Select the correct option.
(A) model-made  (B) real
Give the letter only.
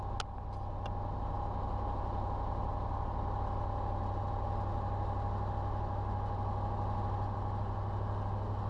B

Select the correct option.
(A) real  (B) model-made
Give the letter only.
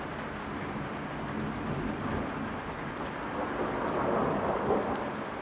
A